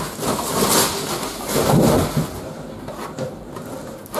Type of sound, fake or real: real